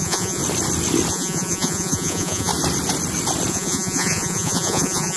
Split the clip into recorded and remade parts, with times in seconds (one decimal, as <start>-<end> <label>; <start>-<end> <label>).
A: 0.0-0.4 remade; 0.4-1.1 recorded; 1.1-2.5 remade; 2.5-3.5 recorded; 3.5-5.2 remade